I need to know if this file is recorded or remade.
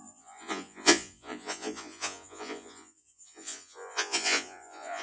remade